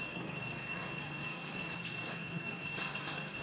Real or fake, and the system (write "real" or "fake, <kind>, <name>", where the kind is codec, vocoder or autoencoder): fake, codec, SNAC